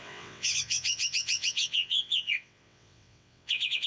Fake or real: fake